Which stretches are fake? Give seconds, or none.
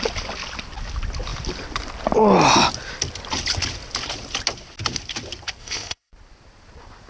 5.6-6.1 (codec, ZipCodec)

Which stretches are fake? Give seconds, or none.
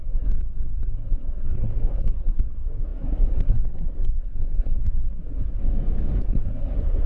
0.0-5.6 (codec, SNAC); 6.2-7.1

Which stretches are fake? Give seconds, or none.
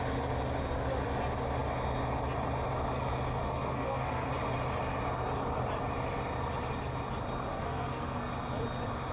3.4-4.3 (codec, SNAC); 7.5-8.3